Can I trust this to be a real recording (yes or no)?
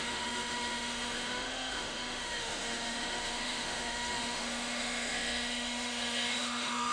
no